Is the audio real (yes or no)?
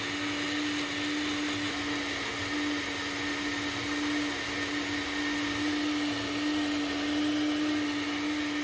yes